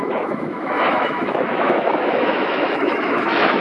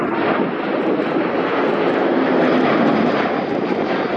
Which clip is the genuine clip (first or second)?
second